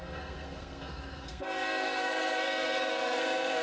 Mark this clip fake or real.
fake